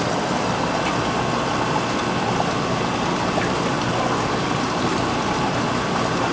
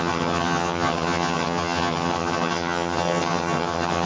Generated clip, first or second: second